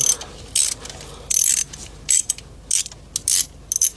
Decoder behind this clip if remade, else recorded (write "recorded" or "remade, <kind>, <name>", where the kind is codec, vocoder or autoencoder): recorded